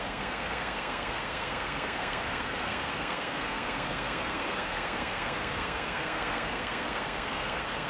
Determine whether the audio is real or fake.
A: fake